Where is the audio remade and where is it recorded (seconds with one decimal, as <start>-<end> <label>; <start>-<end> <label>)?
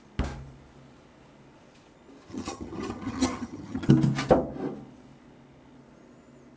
0.0-2.3 recorded; 2.3-3.9 remade; 3.9-6.6 recorded